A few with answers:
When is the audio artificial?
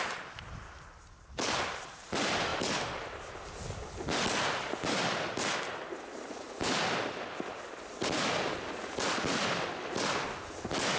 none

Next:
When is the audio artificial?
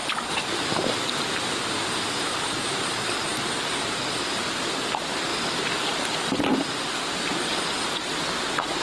5.3-6.7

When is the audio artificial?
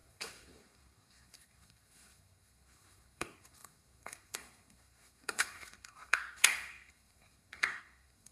0.0-8.3